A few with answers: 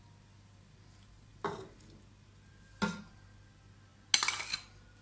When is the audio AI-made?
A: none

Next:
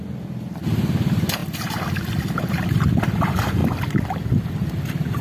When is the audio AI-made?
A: none

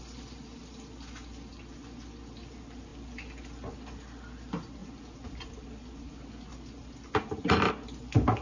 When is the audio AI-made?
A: none

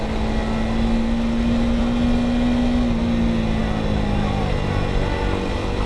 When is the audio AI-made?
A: none

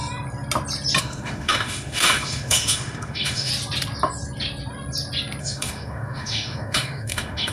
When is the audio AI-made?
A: 1.0-3.5 (autoencoder, DAC-VAE); 5.4-7.5

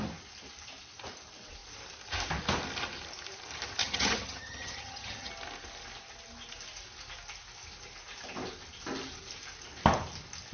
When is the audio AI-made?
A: 3.8-5.3 (vocoder, HiFi-GAN)

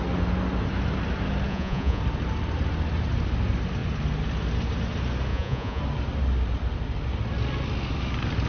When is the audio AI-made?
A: 1.5-2.0 (vocoder, Vocos); 5.3-5.8

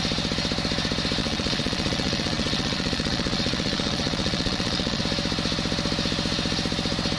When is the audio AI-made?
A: 1.2-5.0 (vocoder, Vocos)